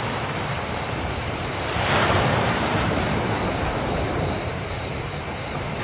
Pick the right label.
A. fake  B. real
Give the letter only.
A